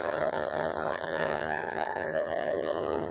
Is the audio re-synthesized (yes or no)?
yes